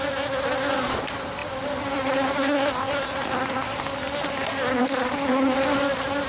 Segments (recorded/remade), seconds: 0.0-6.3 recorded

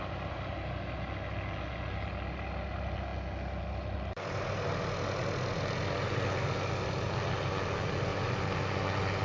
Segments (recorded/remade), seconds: 0.0-9.2 recorded

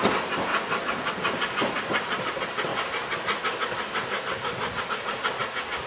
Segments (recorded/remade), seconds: 0.0-5.9 recorded

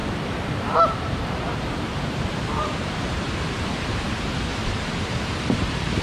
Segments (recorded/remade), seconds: 0.0-3.3 remade; 3.3-4.6 recorded; 4.6-6.0 remade